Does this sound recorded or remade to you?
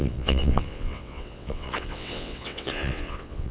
remade